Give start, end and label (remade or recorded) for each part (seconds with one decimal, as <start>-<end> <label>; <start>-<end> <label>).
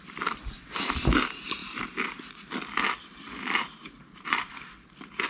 0.0-1.6 recorded; 1.6-2.2 remade; 2.2-3.8 recorded; 3.8-4.5 remade; 4.5-5.3 recorded